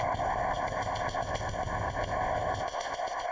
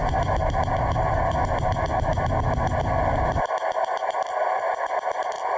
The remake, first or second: first